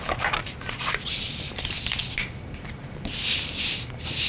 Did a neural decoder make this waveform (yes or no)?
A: no